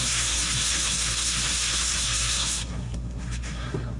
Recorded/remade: remade